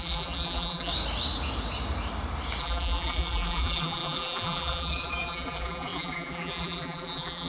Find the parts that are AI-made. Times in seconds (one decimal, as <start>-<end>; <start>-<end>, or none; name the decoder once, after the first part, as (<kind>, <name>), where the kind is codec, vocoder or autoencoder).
0.0-0.9 (vocoder, BigVGAN v2); 2.6-7.5